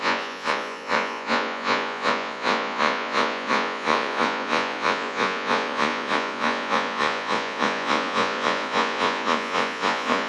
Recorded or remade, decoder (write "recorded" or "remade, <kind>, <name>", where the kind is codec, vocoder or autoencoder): remade, vocoder, Vocos